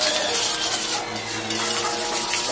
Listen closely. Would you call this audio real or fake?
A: real